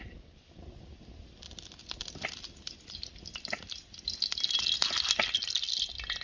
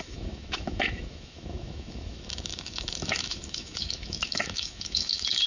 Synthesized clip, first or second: second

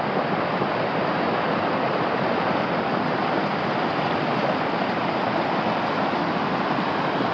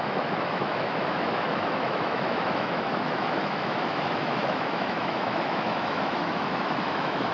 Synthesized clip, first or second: second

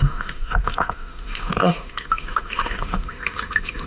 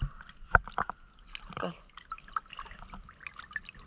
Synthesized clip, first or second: first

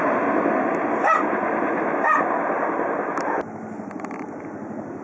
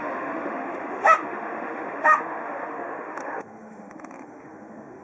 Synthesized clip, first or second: second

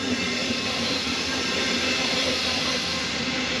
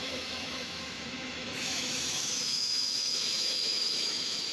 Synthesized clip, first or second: second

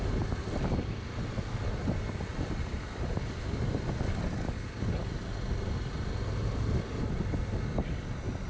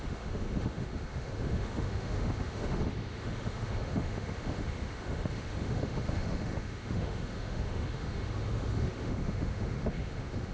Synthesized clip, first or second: second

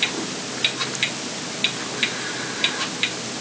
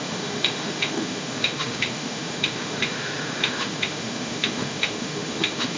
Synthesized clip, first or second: second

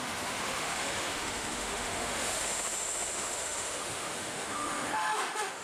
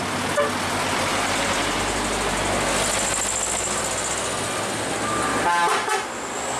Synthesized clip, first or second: first